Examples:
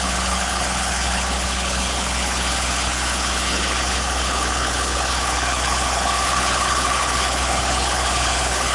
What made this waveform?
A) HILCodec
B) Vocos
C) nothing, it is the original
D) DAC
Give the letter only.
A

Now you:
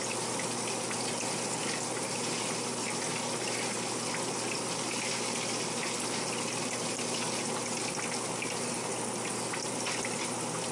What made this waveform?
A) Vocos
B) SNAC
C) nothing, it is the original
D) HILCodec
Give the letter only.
C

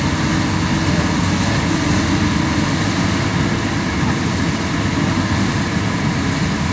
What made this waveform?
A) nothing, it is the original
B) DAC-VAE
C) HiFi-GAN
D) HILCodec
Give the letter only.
A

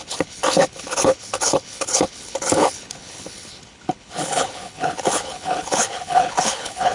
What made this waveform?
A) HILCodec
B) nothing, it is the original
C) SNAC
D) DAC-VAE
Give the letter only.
A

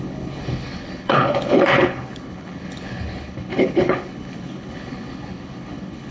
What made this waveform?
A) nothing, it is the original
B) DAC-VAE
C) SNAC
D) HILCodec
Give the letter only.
D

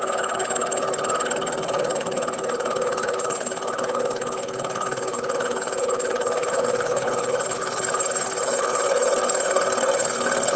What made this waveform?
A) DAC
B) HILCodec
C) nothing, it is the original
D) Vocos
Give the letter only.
B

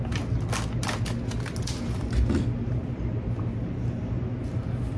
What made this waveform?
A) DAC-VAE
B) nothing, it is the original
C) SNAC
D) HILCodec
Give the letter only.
B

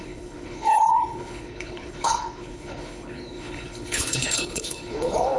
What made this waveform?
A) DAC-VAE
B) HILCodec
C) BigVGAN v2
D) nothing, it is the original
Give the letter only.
B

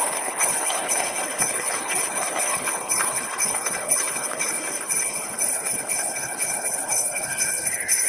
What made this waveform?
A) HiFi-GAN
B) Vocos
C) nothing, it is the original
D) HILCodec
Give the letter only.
D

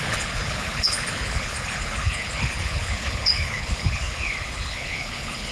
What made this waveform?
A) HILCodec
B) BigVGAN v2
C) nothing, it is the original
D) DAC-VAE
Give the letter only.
A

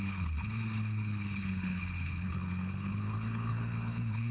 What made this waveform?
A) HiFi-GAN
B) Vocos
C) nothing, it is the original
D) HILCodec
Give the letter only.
D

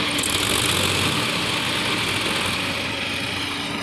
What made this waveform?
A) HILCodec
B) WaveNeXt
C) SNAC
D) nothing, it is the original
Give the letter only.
D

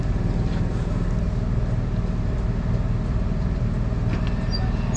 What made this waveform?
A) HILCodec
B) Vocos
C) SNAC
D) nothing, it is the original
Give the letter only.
D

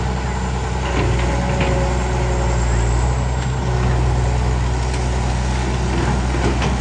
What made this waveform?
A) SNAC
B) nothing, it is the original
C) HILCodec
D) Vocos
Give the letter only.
B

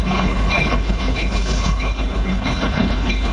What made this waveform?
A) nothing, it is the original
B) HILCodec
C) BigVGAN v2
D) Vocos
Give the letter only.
B